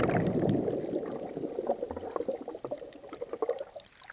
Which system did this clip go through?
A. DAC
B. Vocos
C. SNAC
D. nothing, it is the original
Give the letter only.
D